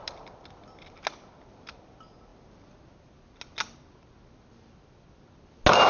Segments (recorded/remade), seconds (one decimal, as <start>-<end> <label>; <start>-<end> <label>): 0.0-5.9 recorded